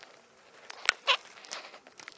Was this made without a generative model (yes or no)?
yes